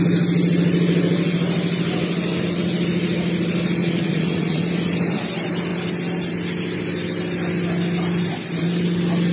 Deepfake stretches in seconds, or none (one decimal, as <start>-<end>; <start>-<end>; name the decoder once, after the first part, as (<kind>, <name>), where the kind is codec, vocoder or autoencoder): 3.8-4.6 (vocoder, Vocos)